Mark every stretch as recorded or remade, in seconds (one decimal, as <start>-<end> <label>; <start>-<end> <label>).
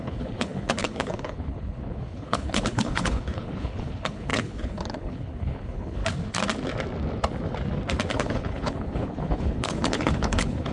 0.0-6.0 remade; 6.0-8.1 recorded; 8.1-10.7 remade